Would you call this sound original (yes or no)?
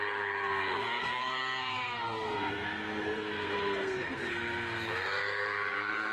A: no